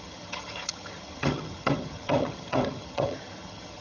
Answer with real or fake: fake